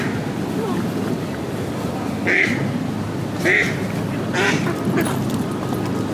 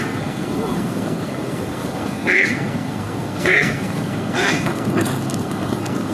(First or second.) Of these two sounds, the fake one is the second